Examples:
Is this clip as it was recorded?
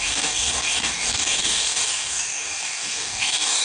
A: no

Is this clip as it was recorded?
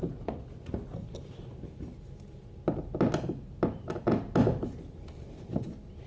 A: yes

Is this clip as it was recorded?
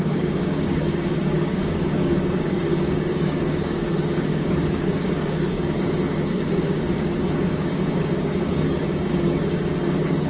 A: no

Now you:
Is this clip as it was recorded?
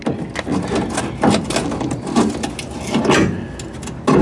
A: yes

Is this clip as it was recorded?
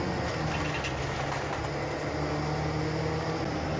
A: yes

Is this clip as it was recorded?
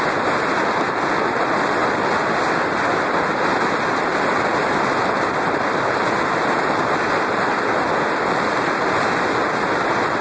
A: yes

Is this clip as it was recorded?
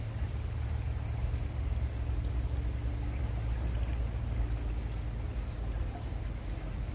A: yes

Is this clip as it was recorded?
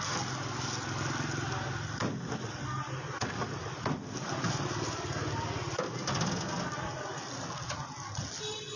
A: yes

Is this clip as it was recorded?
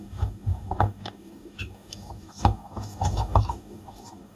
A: no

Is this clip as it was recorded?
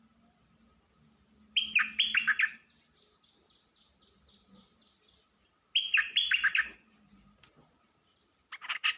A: yes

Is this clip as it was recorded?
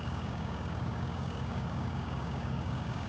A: no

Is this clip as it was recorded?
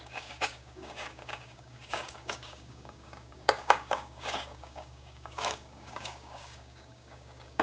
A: no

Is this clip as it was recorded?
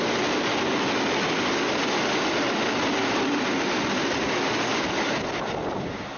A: yes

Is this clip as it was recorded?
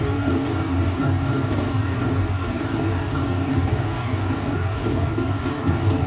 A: no